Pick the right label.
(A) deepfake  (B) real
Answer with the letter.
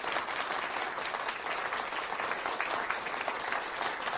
B